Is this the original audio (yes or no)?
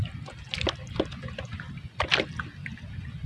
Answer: yes